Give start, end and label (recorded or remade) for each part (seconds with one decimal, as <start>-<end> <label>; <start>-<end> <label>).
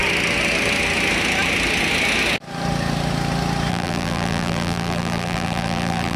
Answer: 0.0-3.7 recorded; 3.7-6.2 remade